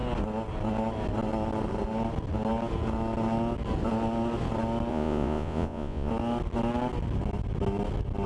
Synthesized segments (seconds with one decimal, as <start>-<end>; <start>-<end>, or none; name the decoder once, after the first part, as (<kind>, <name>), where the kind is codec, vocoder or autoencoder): 4.9-6.1 (vocoder, Vocos)